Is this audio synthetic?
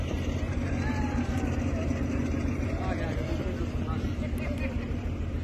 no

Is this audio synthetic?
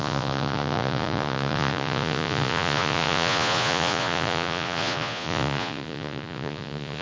yes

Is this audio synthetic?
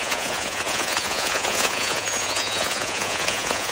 yes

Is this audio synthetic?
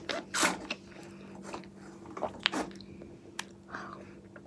no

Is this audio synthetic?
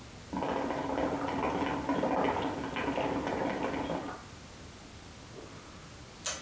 no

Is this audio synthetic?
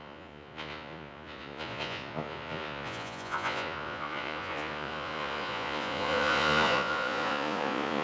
yes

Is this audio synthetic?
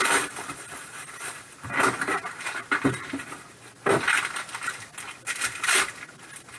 no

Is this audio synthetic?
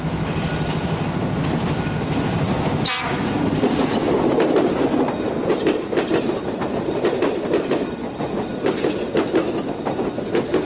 no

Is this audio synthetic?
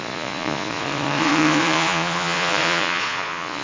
yes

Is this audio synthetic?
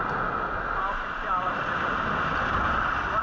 no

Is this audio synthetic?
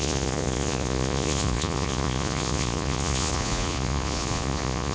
yes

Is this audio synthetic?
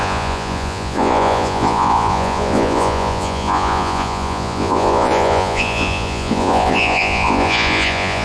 yes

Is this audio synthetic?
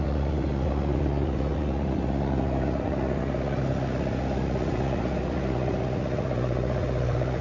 yes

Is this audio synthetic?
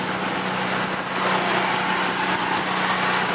no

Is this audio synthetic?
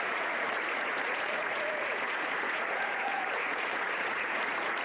yes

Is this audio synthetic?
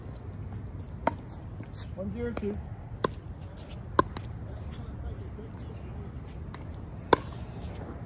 no